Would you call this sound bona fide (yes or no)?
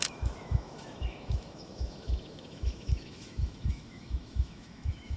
no